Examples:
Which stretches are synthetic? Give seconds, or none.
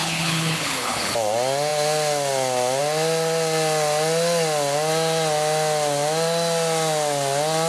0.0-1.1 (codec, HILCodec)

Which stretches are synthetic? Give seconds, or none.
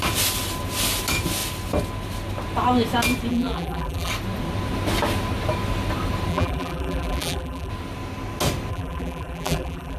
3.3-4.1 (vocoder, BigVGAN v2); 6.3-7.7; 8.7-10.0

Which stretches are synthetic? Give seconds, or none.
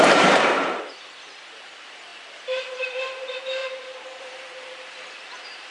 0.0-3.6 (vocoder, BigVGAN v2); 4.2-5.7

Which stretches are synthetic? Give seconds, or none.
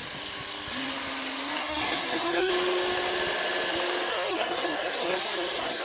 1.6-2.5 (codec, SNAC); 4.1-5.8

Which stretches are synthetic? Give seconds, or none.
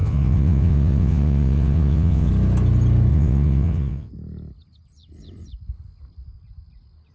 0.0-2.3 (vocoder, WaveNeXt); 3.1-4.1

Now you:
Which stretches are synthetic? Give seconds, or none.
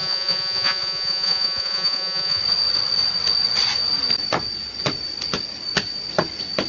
0.0-2.4 (vocoder, Vocos)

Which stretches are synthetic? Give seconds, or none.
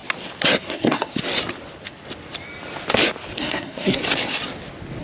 0.6-1.1 (codec, SNAC); 3.4-4.0